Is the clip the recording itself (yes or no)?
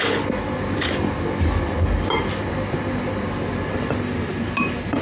yes